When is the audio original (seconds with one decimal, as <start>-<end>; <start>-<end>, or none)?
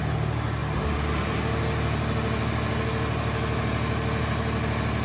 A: 0.0-5.0